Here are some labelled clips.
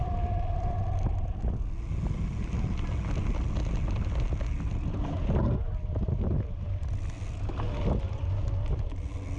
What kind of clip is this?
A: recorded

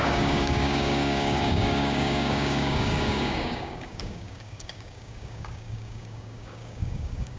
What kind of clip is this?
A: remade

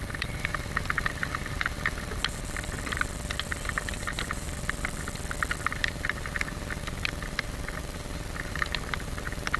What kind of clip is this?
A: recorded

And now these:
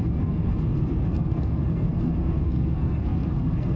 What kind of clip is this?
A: remade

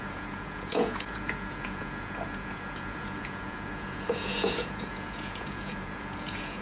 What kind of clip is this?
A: remade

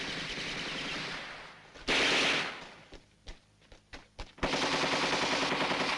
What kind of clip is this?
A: recorded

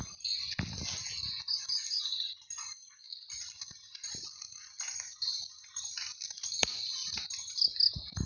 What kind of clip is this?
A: recorded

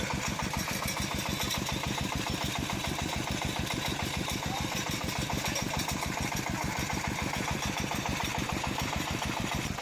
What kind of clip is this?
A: remade